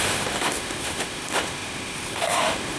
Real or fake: fake